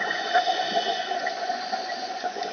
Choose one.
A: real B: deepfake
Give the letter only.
B